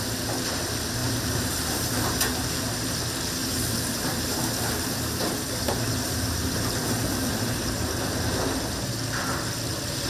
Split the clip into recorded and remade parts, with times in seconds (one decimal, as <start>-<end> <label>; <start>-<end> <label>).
0.0-1.0 recorded; 1.0-2.6 remade; 2.6-3.4 recorded; 3.4-6.5 remade; 6.5-10.1 recorded